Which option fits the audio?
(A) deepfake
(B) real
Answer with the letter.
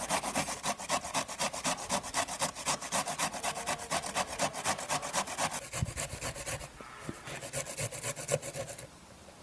B